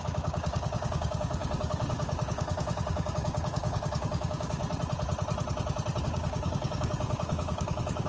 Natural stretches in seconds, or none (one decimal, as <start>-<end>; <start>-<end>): 4.6-6.0